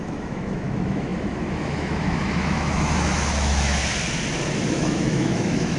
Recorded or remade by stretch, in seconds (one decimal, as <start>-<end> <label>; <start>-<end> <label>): 0.0-3.8 remade; 3.8-4.7 recorded; 4.7-5.8 remade